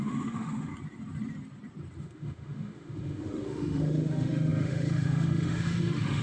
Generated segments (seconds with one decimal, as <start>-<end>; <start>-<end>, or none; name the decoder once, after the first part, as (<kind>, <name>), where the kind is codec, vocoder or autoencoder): 0.0-0.7 (autoencoder, DAC-VAE); 2.0-6.2